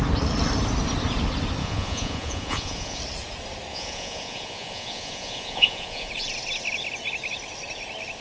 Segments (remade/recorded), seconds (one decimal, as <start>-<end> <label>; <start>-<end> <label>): 0.0-1.6 recorded; 1.6-3.0 remade; 3.0-3.7 recorded; 3.7-6.1 remade; 6.1-8.2 recorded